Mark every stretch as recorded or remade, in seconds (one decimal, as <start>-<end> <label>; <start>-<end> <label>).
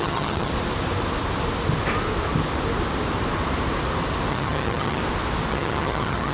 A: 0.0-0.5 remade; 0.5-4.3 recorded; 4.3-5.0 remade; 5.0-5.5 recorded; 5.5-6.3 remade